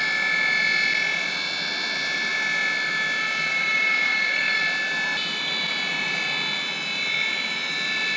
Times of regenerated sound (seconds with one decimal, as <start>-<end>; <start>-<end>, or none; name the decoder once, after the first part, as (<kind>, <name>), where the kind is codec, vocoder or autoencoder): 3.5-4.6 (codec, DAC)